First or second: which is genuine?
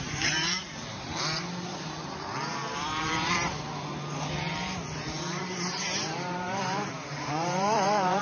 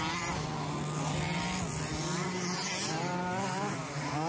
second